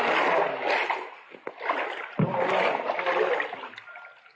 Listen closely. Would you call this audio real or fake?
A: real